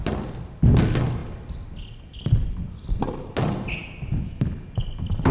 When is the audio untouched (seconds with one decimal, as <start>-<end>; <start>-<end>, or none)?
0.0-5.3